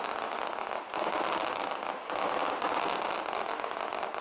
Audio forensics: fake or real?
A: real